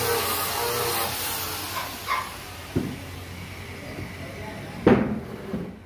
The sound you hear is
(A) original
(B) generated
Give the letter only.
A